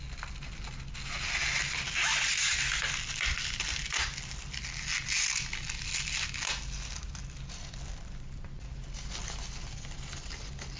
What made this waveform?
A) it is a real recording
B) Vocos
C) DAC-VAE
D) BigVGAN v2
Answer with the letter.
A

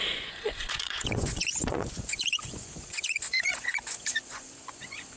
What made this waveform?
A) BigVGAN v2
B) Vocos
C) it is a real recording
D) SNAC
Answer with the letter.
B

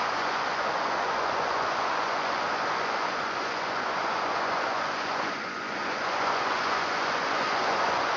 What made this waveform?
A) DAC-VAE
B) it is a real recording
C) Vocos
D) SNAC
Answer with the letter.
C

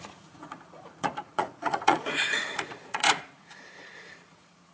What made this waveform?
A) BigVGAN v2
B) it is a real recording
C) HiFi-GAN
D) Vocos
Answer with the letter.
D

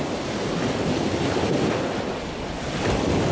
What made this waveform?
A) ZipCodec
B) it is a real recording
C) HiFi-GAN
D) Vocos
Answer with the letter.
B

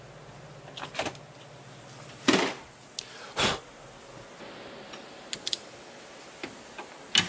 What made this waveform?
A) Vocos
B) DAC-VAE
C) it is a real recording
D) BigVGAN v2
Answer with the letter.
C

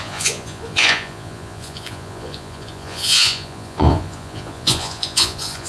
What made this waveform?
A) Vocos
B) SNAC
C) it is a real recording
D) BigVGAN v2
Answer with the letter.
A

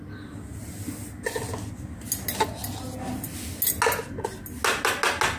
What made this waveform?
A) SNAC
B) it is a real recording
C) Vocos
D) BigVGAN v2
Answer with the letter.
B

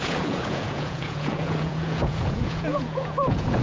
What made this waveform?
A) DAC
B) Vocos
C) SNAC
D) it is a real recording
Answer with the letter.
B